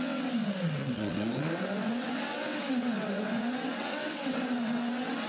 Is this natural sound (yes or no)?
no